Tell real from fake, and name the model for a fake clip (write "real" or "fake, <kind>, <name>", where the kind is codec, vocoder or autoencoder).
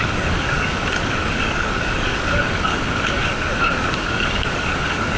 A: fake, codec, DAC